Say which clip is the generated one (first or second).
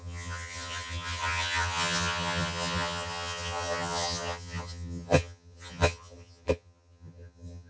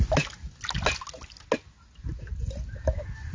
first